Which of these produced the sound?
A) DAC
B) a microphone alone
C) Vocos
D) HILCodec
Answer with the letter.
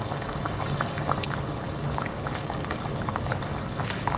A